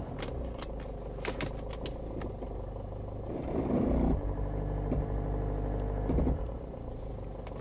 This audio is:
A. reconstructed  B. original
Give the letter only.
B